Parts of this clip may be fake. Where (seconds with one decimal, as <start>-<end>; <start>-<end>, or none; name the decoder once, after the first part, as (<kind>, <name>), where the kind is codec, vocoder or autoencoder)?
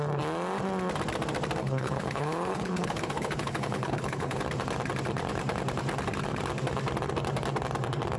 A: 1.6-4.4 (codec, HILCodec)